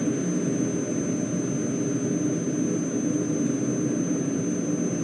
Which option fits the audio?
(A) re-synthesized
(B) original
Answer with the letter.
B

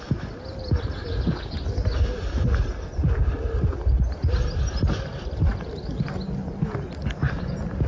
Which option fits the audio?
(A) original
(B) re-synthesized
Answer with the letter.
A